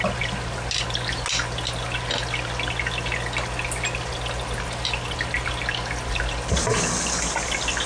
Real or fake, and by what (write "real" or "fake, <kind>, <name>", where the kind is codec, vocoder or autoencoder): real